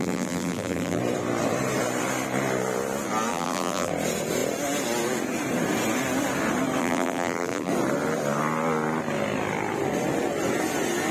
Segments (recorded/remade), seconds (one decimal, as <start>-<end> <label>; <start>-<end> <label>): 0.0-1.0 remade; 1.0-3.3 recorded; 3.3-3.9 remade; 3.9-6.8 recorded; 6.8-7.7 remade; 7.7-11.1 recorded